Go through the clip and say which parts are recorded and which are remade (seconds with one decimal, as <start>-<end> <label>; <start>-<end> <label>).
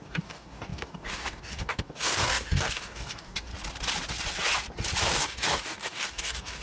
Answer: 0.0-3.5 remade; 3.5-5.1 recorded; 5.1-6.6 remade